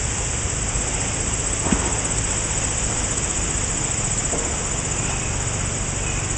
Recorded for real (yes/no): yes